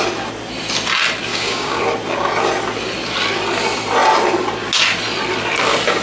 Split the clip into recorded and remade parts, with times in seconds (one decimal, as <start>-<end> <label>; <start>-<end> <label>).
0.0-1.3 recorded; 1.3-1.8 remade; 1.8-6.0 recorded